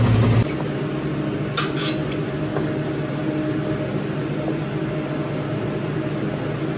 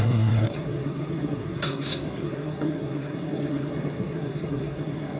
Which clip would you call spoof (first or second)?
second